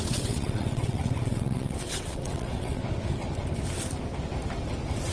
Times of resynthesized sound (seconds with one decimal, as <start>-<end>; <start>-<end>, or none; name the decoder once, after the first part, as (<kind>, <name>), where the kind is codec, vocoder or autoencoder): 0.0-2.8 (vocoder, WaveNeXt)